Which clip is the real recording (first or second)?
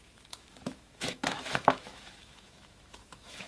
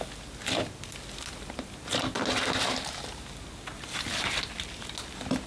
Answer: second